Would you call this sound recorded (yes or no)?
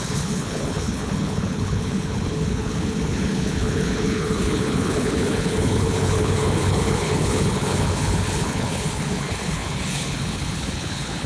no